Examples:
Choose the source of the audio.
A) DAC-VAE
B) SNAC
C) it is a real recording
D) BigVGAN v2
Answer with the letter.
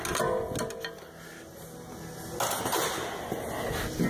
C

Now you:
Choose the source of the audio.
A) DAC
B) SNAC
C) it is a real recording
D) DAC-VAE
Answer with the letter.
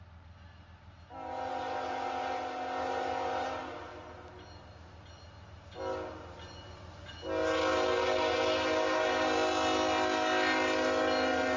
C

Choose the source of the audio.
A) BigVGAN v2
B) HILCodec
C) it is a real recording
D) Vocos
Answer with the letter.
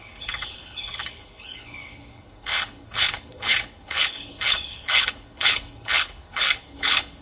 B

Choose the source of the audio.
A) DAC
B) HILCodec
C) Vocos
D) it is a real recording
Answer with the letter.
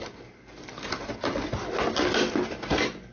D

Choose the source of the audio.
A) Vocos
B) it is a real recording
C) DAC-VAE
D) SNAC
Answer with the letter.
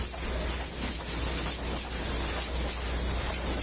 B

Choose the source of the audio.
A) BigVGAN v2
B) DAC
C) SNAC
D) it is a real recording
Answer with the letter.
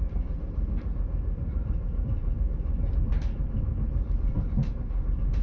A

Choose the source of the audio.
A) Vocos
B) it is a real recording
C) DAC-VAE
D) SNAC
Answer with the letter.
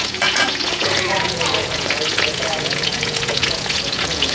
A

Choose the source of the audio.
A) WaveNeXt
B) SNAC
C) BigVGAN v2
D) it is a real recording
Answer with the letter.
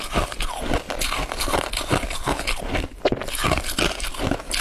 D